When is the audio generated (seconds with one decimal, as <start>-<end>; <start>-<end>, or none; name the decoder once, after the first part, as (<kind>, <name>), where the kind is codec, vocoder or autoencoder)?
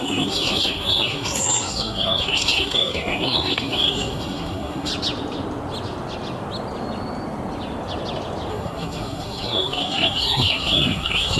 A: 0.0-4.9 (codec, SNAC); 8.5-11.4